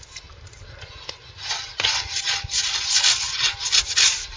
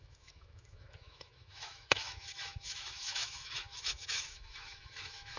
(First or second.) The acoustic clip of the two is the first